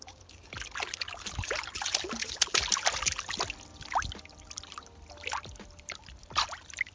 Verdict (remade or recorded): recorded